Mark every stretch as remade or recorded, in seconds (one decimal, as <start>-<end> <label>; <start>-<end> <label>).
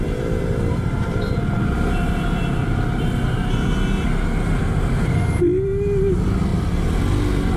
0.0-7.6 recorded